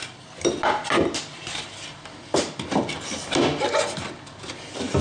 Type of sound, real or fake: real